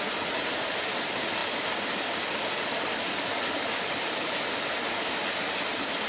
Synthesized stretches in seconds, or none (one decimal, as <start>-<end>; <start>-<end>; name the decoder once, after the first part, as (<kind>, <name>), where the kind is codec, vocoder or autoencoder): none